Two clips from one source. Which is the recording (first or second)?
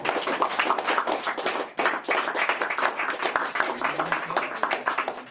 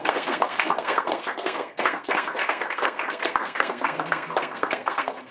first